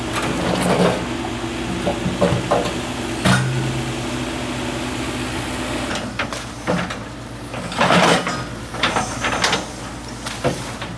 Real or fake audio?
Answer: real